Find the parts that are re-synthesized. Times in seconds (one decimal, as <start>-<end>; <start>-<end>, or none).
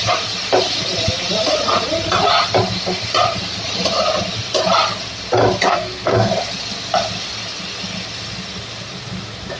5.7-6.3